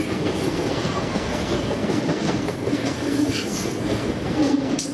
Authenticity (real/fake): fake